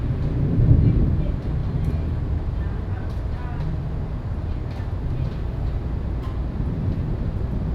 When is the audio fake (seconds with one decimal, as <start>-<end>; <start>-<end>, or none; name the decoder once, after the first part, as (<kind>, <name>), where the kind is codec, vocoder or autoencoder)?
none